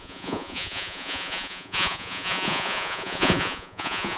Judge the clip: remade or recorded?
remade